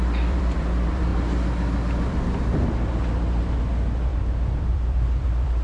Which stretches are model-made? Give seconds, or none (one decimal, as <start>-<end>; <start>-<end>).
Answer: 0.0-1.1; 3.4-4.1; 4.7-5.6